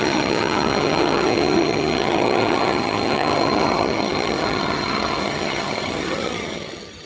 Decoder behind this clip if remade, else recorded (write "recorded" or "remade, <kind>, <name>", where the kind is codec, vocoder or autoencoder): remade, vocoder, HiFi-GAN